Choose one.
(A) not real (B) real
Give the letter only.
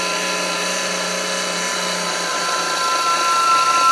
B